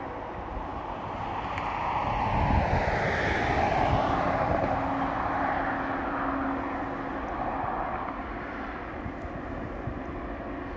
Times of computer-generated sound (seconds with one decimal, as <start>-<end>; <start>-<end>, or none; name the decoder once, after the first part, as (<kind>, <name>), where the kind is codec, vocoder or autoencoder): none